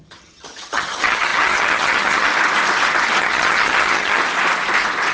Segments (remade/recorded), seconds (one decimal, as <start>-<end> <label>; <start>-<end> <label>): 0.0-2.3 remade; 2.3-3.2 recorded; 3.2-4.2 remade; 4.2-5.1 recorded